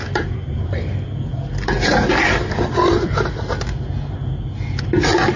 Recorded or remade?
recorded